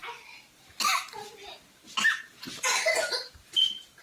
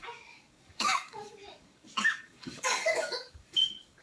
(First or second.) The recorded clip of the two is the first